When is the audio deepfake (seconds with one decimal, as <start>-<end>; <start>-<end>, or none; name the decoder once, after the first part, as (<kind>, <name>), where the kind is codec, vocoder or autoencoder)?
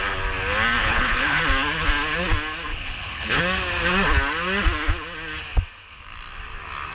0.8-1.4 (codec, HILCodec); 2.7-3.4